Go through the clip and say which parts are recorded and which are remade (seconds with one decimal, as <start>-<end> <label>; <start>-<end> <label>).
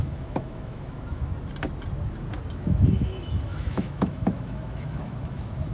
0.0-1.3 remade; 1.3-2.5 recorded; 2.5-5.7 remade